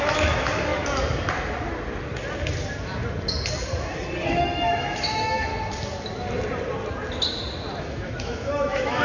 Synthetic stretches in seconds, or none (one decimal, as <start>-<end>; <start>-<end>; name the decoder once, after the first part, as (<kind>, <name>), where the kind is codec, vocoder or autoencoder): 0.0-0.7 (autoencoder, DAC-VAE); 4.3-5.5; 7.8-9.0